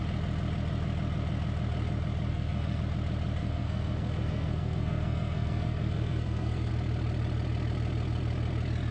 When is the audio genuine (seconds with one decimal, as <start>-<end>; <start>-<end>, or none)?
0.0-2.3; 2.8-3.4; 6.7-8.9